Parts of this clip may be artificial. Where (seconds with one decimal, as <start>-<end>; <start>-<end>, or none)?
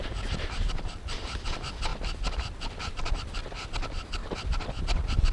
none